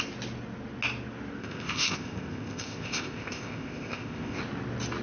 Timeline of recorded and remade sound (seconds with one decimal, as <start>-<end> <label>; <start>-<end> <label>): 0.0-1.4 recorded; 1.4-4.4 remade; 4.4-5.0 recorded